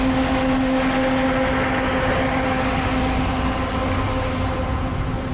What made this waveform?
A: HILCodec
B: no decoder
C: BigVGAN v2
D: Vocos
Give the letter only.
B